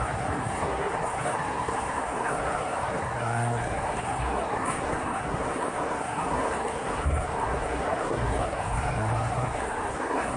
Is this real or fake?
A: fake